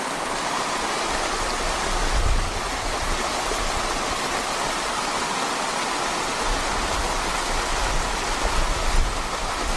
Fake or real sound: real